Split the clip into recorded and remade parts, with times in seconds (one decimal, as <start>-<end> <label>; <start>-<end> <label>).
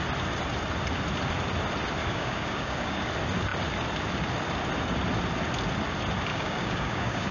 0.0-2.0 recorded; 2.0-3.1 remade; 3.1-6.3 recorded; 6.3-7.3 remade